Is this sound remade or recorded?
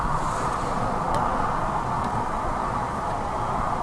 remade